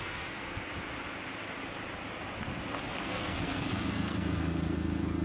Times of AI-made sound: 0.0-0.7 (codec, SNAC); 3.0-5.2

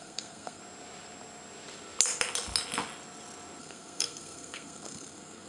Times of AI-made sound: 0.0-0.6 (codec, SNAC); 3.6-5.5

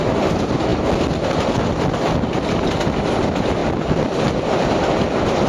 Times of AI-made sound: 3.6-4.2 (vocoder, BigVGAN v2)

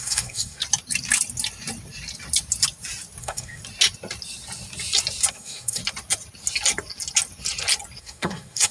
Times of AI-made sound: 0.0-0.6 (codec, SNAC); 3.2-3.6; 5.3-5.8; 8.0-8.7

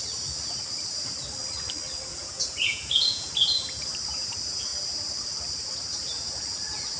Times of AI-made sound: 2.1-3.3 (vocoder, Vocos)